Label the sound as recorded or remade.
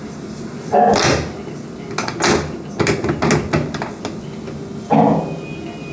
recorded